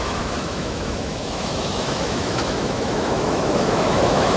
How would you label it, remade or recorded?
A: remade